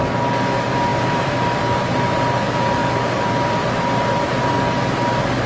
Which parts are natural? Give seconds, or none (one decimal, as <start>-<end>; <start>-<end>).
0.0-0.9; 1.6-2.8; 4.5-5.5